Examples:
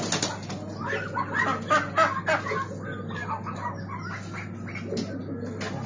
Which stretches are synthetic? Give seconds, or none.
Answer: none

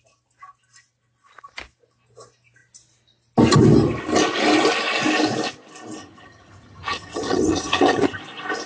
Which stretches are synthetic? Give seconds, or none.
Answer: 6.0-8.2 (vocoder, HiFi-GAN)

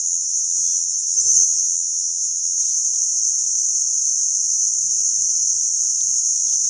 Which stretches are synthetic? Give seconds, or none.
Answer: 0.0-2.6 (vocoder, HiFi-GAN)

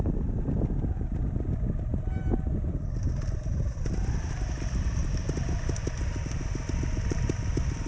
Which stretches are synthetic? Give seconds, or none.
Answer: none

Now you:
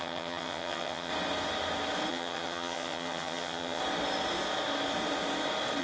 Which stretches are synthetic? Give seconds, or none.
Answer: 0.0-1.1 (vocoder, HiFi-GAN); 2.1-3.8

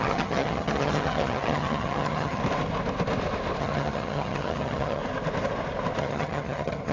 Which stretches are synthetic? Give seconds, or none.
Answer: 0.0-2.4 (vocoder, HiFi-GAN); 3.6-5.0; 6.0-6.9

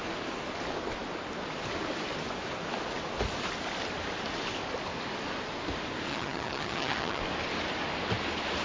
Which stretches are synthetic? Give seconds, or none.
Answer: 6.1-7.2 (vocoder, HiFi-GAN)

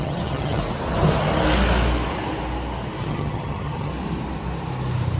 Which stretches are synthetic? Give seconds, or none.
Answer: 0.0-0.6 (vocoder, HiFi-GAN); 3.0-3.9